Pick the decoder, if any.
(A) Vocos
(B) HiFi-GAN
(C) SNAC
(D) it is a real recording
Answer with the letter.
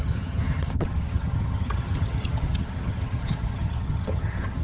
B